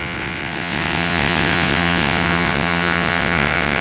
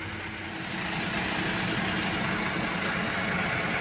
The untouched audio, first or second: second